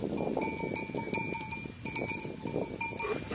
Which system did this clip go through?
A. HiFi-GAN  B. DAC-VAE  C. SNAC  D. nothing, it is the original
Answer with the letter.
D